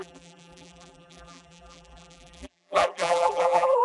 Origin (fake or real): fake